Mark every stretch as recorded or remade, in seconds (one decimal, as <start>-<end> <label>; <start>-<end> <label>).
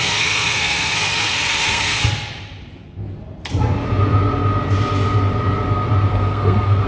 0.0-2.0 remade; 2.0-6.1 recorded; 6.1-6.9 remade